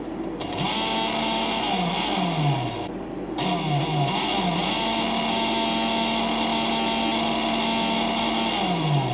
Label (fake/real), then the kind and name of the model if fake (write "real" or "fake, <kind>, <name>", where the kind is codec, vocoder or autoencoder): real